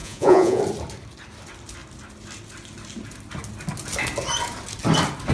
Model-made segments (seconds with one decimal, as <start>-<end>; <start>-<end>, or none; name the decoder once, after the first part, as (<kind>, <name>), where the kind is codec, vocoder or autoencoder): 0.0-0.6 (vocoder, Vocos)